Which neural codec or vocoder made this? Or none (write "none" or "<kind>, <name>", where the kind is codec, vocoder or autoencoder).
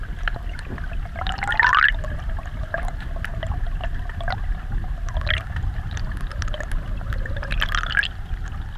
none